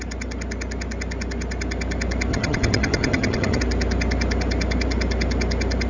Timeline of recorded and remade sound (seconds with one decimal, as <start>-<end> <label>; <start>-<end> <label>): 0.0-2.3 recorded; 2.3-3.6 remade; 3.6-5.9 recorded